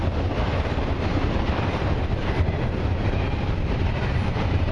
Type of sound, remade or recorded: remade